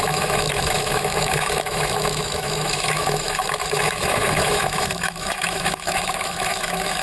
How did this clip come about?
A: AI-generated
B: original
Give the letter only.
A